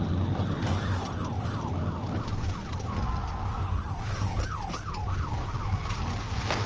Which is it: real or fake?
real